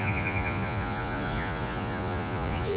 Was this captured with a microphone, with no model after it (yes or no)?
no